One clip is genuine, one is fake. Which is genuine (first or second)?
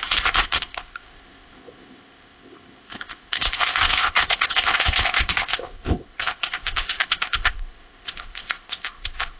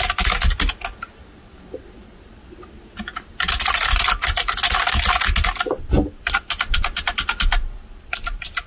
second